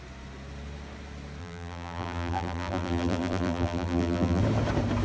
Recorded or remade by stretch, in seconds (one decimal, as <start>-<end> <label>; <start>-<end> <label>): 0.0-1.4 recorded; 1.4-4.4 remade; 4.4-5.0 recorded